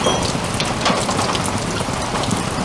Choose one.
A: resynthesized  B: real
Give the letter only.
B